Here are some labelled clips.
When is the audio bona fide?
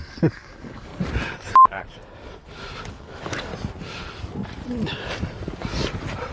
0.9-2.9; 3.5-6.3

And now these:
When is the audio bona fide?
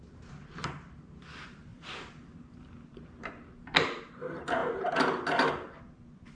0.0-1.7; 3.3-6.3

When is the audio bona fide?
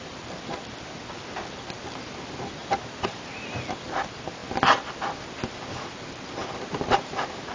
0.0-2.6; 3.3-6.4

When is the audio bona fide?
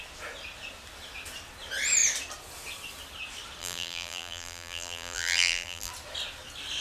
0.0-3.6; 5.9-6.8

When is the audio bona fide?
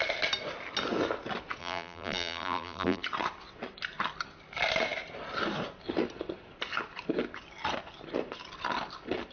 0.0-1.6; 3.0-9.3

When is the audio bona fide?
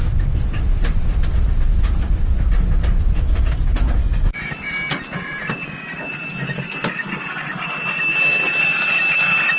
0.0-4.0; 4.6-9.6